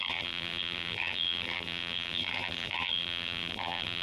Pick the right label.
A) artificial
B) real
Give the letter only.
A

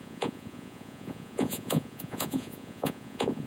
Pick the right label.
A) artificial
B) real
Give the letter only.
A